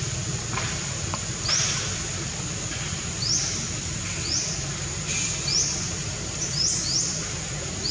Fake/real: real